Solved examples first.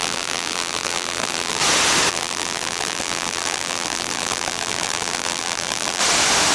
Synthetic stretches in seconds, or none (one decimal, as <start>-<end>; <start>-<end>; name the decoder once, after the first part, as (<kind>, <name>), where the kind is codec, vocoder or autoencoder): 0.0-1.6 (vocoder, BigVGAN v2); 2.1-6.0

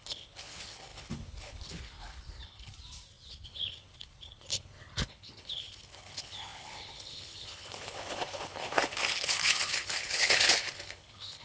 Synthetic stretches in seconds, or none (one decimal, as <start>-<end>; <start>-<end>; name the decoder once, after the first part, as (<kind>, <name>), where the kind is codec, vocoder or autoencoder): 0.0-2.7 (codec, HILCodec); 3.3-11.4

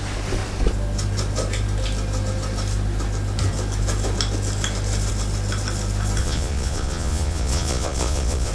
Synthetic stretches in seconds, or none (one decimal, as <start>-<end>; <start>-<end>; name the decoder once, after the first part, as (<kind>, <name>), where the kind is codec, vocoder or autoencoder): 6.2-8.5 (vocoder, Vocos)

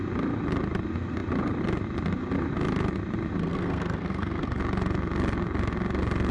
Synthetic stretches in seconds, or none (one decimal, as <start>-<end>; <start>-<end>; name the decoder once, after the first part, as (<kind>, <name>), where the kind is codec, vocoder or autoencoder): 3.4-4.6 (codec, SNAC)

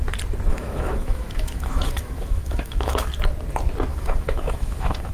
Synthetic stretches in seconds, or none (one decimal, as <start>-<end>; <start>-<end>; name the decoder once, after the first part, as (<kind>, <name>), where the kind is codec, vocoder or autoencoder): 0.5-3.1 (autoencoder, DAC-VAE); 3.9-5.1

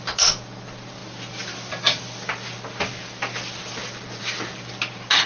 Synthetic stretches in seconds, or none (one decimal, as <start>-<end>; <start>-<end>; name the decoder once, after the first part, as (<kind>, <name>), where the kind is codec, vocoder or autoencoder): none

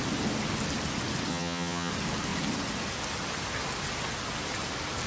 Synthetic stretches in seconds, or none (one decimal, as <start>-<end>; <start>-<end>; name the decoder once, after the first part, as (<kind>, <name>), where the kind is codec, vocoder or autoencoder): 1.3-1.9 (vocoder, HiFi-GAN)

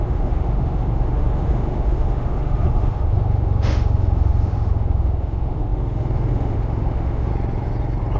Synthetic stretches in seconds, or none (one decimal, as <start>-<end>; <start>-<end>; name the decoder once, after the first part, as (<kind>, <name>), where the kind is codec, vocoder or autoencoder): 0.0-7.3 (autoencoder, DAC-VAE)